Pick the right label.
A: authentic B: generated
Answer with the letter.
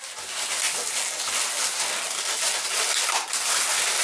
A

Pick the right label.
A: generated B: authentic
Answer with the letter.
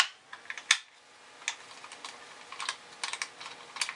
B